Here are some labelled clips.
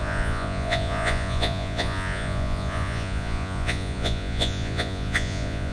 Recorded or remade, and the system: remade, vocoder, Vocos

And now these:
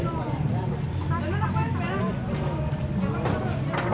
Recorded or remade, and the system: recorded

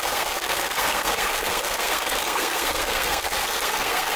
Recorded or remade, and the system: remade, codec, SNAC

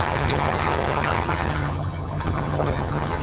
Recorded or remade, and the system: remade, vocoder, HiFi-GAN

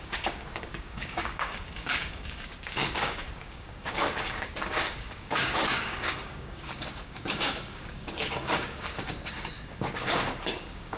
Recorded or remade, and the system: remade, codec, DAC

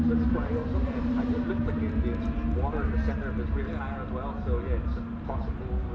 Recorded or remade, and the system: recorded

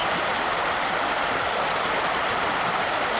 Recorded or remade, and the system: recorded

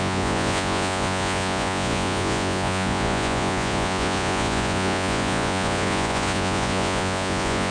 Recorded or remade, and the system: remade, vocoder, Vocos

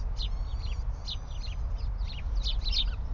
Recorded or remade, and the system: recorded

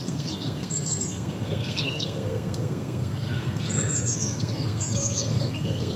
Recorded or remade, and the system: remade, codec, SNAC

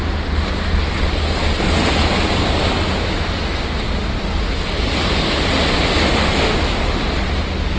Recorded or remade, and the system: recorded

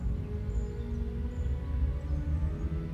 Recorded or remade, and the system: recorded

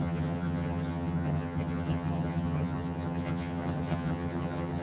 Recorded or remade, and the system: remade, vocoder, HiFi-GAN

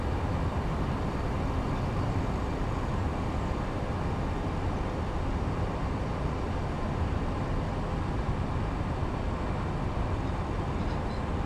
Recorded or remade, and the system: recorded